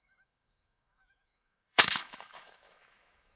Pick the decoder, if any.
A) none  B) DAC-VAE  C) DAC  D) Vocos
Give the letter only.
B